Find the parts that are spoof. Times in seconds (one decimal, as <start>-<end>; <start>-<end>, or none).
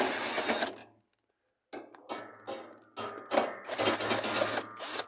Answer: none